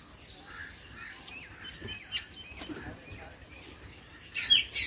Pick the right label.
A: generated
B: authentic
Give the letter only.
B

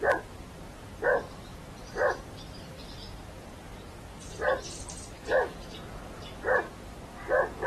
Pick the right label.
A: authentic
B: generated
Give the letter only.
B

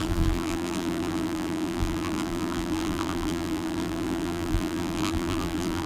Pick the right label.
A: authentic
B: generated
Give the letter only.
B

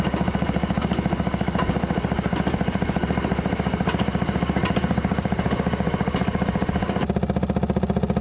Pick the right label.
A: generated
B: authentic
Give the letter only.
B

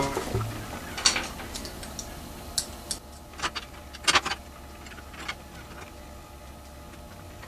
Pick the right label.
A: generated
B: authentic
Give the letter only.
B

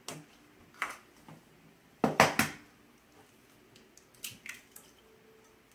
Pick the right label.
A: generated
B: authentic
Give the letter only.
B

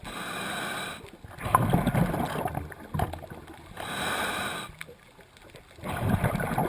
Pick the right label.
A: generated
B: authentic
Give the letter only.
B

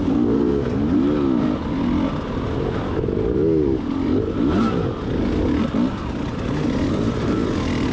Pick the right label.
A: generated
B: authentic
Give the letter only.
B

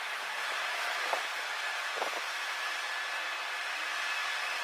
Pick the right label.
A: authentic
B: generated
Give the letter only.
B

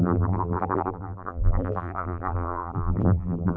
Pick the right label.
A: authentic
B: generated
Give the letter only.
B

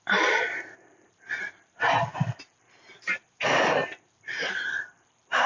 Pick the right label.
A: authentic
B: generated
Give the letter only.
B